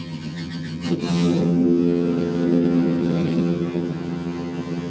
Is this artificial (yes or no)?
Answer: yes